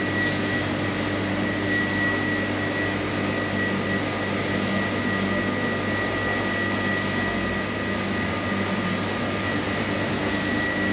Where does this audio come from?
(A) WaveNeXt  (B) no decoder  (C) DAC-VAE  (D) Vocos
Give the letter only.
B